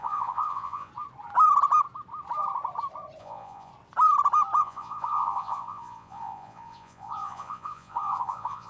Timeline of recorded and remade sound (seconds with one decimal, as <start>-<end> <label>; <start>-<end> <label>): 0.0-0.9 remade; 0.9-3.2 recorded; 3.2-3.7 remade; 3.7-4.6 recorded; 4.6-8.7 remade

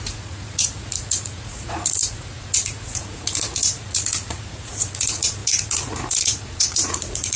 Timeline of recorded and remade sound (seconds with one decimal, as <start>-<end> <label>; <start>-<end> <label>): 0.0-7.4 remade

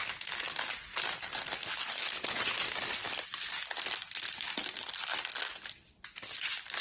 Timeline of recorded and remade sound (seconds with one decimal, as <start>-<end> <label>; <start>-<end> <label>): 0.0-1.8 recorded; 1.8-2.4 remade; 2.4-6.8 recorded